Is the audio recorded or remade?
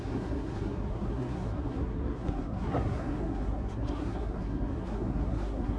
remade